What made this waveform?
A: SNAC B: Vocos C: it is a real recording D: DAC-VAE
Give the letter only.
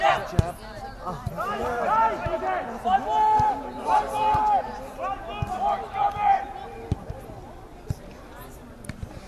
C